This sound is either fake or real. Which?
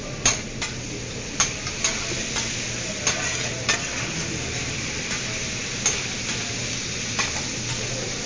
real